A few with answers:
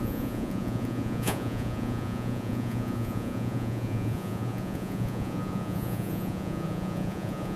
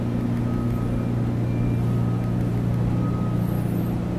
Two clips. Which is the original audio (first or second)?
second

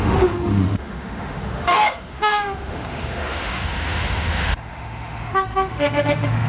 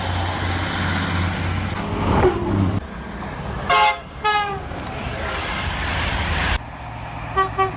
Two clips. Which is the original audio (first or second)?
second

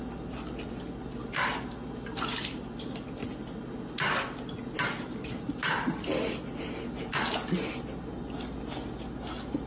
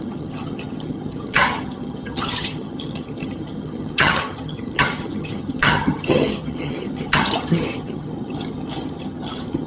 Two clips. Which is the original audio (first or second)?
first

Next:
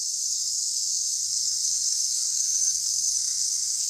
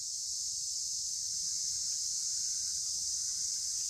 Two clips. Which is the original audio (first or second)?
second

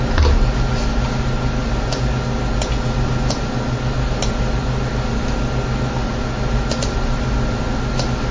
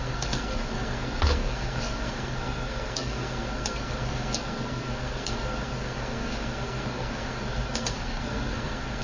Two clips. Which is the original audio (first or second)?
first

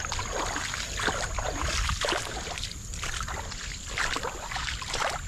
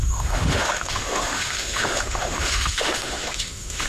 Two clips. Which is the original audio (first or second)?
first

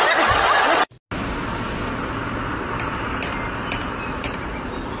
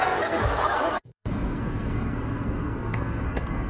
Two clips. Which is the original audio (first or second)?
first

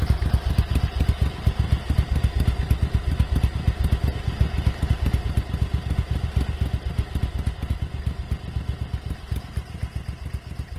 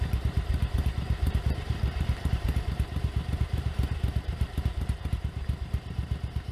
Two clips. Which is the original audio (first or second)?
first